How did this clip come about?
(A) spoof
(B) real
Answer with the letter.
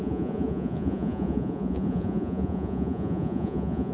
A